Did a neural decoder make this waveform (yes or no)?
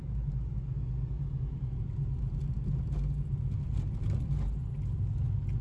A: no